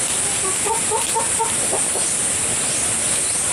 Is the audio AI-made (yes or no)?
no